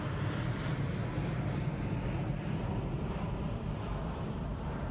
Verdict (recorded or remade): recorded